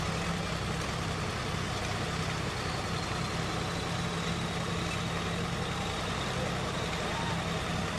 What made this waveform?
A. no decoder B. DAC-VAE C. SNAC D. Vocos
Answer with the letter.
A